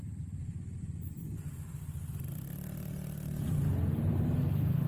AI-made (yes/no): no